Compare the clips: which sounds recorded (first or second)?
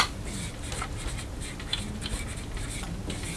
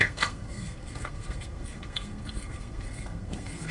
first